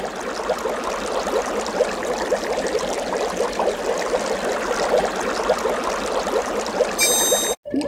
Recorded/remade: recorded